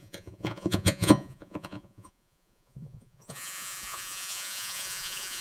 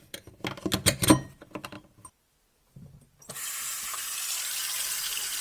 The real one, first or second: second